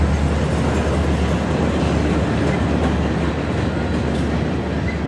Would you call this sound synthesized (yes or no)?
no